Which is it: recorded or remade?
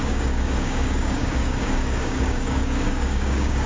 remade